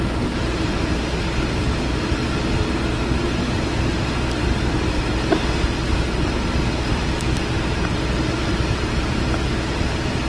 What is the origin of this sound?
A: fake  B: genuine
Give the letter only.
B